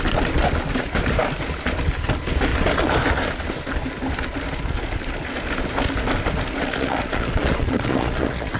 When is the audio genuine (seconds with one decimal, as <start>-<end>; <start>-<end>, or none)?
0.0-6.6